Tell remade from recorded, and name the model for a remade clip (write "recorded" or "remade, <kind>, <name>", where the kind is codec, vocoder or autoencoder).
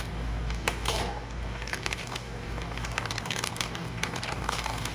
remade, codec, DAC